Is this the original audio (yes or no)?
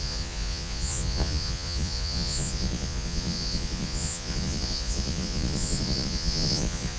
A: no